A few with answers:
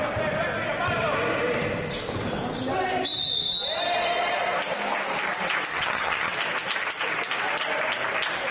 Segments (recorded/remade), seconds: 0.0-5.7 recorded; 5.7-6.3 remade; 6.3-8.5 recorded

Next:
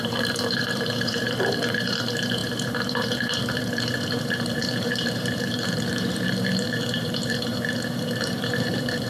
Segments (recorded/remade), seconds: 0.0-9.1 remade

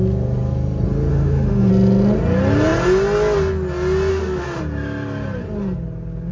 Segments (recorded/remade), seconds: 0.0-1.1 recorded; 1.1-1.7 remade; 1.7-4.1 recorded; 4.1-4.6 remade; 4.6-6.3 recorded

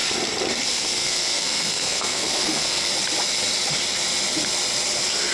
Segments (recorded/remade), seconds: 0.0-0.7 recorded; 0.7-2.9 remade; 2.9-5.3 recorded

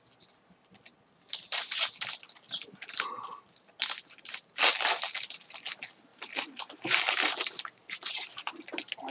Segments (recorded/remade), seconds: 0.0-3.8 recorded; 3.8-4.5 remade; 4.5-6.1 recorded; 6.1-8.6 remade; 8.6-9.1 recorded

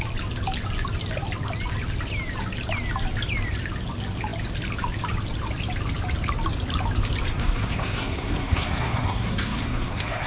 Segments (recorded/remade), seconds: 0.0-7.3 recorded; 7.3-10.3 remade

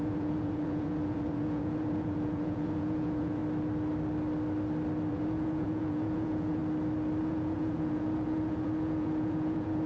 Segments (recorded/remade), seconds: 0.0-3.4 remade; 3.4-5.1 recorded; 5.1-6.6 remade; 6.6-7.2 recorded; 7.2-9.9 remade

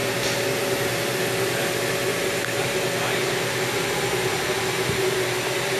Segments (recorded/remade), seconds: 0.0-3.2 recorded; 3.2-5.8 remade